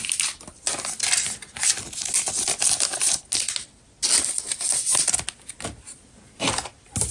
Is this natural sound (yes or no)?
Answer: yes